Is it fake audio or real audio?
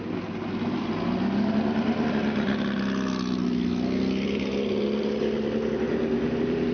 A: real